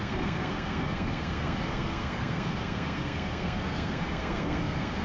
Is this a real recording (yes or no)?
no